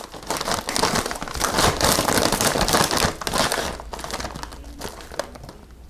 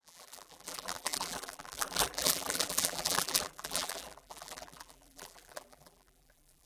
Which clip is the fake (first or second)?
second